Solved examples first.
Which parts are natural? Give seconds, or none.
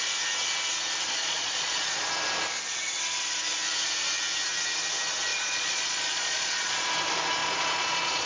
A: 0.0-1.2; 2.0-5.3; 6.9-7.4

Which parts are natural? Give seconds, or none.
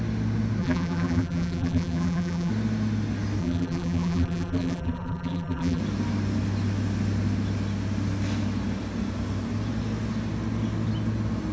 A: 0.0-0.6; 2.5-3.4; 5.8-11.5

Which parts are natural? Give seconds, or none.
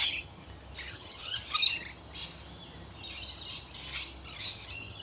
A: 0.4-0.9; 1.4-4.4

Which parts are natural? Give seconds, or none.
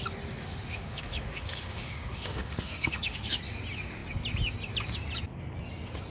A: 0.0-0.4; 3.4-6.1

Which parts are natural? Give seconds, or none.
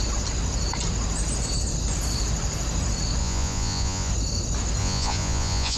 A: 0.0-3.2; 4.1-4.8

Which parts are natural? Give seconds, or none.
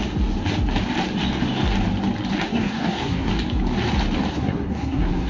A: 0.0-2.5; 3.3-4.3